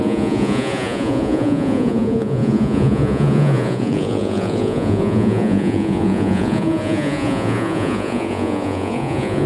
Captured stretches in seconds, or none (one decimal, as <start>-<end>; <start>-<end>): none